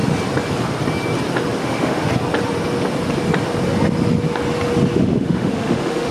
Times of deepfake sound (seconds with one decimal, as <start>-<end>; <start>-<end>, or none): 1.6-2.1; 5.0-6.1